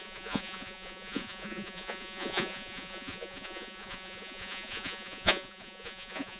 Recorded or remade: remade